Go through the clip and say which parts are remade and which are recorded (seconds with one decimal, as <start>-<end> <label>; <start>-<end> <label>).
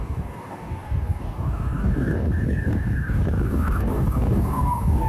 0.0-5.1 remade